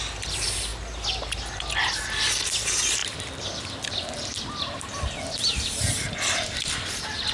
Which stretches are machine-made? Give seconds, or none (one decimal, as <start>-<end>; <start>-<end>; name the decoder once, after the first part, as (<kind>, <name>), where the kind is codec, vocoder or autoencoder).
3.0-6.7 (vocoder, BigVGAN v2)